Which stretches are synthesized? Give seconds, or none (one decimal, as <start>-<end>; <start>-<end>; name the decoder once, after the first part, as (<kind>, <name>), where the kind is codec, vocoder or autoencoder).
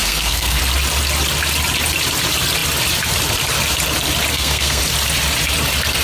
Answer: 0.0-0.6 (codec, SNAC); 4.3-4.8